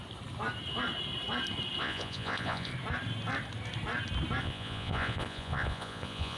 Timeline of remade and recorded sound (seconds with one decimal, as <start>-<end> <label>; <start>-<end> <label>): 0.0-1.8 recorded; 1.8-2.7 remade; 2.7-4.4 recorded; 4.4-6.4 remade